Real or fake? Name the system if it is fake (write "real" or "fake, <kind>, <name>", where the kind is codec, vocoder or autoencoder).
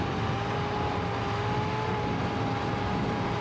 real